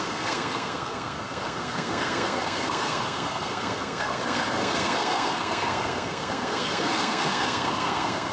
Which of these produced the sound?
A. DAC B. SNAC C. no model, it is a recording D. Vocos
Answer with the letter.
B